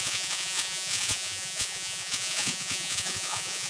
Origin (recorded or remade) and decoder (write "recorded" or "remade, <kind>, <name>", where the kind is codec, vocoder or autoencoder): remade, vocoder, Vocos